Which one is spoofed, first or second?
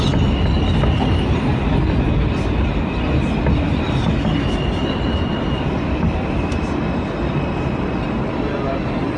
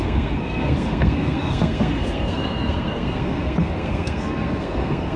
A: second